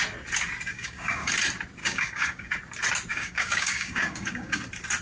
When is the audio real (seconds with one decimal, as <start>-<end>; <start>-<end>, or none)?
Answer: 0.0-0.7; 1.3-1.8; 2.5-3.1; 4.6-5.0